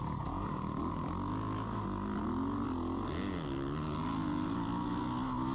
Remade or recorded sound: recorded